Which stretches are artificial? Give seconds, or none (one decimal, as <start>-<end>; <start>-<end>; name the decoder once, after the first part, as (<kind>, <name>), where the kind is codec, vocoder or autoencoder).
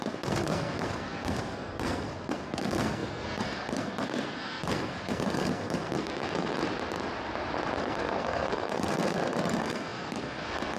0.0-6.5 (codec, SNAC); 7.8-10.8